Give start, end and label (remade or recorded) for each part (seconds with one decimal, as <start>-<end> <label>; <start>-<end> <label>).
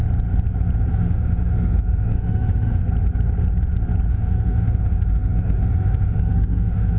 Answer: 0.0-0.9 recorded; 0.9-2.8 remade; 2.8-4.1 recorded; 4.1-7.0 remade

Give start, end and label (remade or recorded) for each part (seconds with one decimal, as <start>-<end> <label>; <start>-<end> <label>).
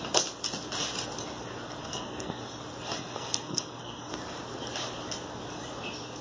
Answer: 0.0-1.8 recorded; 1.8-2.4 remade; 2.4-3.0 recorded; 3.0-4.1 remade; 4.1-6.2 recorded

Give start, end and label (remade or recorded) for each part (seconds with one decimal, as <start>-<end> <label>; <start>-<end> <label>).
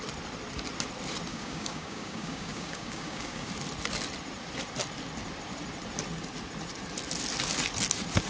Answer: 0.0-1.3 recorded; 1.3-3.5 remade; 3.5-8.3 recorded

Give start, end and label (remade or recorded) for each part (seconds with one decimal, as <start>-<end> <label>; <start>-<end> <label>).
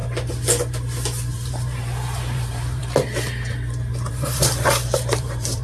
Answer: 0.0-1.3 recorded; 1.3-2.8 remade; 2.8-4.1 recorded; 4.1-5.6 remade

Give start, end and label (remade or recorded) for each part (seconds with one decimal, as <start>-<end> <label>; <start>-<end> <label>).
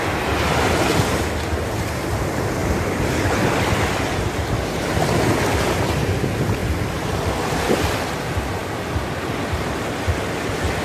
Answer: 0.0-2.6 recorded; 2.6-3.9 remade; 3.9-6.6 recorded; 6.6-8.0 remade; 8.0-10.8 recorded